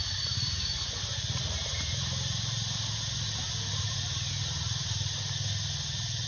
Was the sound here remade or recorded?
recorded